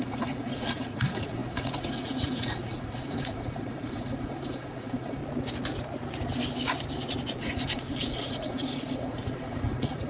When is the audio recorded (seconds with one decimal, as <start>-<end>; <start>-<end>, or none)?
5.2-7.4